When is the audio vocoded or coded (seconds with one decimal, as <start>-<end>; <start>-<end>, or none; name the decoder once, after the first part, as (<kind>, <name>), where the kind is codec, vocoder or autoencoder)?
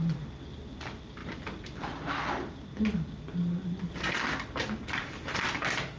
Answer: 1.2-2.3 (vocoder, BigVGAN v2)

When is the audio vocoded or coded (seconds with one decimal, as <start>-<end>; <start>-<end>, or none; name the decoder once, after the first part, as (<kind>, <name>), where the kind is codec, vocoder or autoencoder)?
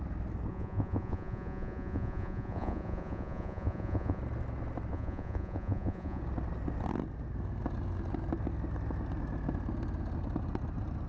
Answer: 0.5-4.2 (vocoder, Vocos); 4.9-6.2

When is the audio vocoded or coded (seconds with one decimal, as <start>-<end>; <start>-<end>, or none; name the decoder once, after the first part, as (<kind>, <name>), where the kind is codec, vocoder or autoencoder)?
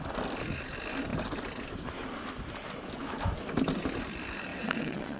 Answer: 4.5-5.2 (vocoder, WaveNeXt)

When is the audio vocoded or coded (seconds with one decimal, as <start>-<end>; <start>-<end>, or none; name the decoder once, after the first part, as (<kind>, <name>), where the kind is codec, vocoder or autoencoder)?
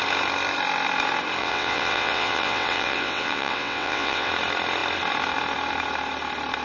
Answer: 1.4-4.3 (vocoder, WaveNeXt)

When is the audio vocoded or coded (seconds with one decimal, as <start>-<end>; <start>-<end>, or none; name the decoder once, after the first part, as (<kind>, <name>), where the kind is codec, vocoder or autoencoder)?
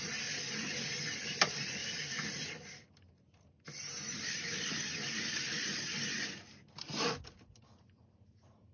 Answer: none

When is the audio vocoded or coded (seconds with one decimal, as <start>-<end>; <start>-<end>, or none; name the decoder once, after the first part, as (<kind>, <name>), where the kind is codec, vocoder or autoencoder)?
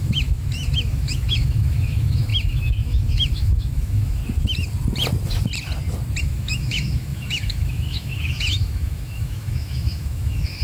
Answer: 0.0-4.2 (autoencoder, DAC-VAE); 6.2-10.6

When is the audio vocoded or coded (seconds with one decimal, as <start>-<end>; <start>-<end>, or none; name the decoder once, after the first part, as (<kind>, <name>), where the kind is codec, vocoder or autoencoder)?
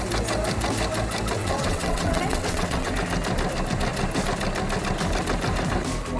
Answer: 1.4-2.9 (vocoder, WaveNeXt)